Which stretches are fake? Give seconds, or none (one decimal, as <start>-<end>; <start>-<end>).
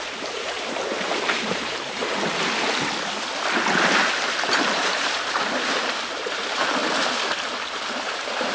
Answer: 0.0-2.0; 4.5-6.8; 8.0-8.5